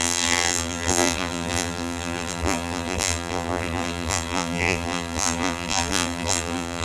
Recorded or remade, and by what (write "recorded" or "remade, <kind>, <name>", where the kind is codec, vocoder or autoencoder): remade, vocoder, BigVGAN v2